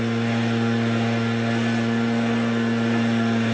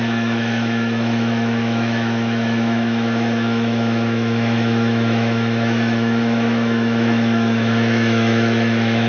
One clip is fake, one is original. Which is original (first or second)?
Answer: first